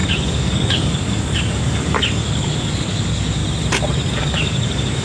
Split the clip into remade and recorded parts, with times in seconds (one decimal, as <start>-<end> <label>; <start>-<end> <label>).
0.0-3.4 remade; 3.4-4.1 recorded; 4.1-5.0 remade